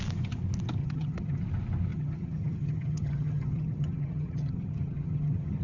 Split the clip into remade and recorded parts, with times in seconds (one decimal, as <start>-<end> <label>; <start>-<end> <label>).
0.0-0.8 recorded; 0.8-1.4 remade; 1.4-1.9 recorded; 1.9-5.6 remade